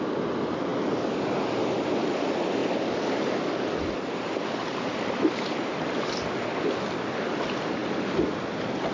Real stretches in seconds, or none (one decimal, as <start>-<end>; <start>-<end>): 0.0-8.9